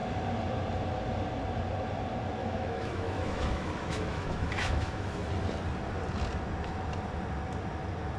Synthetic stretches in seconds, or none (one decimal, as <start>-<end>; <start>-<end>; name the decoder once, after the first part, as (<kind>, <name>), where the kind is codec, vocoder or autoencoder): 2.4-5.3 (autoencoder, DAC-VAE)